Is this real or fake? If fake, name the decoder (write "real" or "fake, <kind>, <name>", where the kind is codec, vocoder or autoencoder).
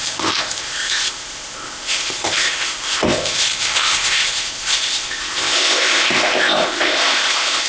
fake, codec, ZipCodec